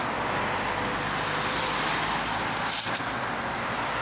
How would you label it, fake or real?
real